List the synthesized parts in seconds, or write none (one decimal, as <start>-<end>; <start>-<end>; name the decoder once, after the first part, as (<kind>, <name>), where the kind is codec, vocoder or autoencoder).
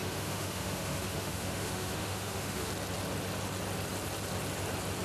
0.0-2.7 (autoencoder, DAC-VAE)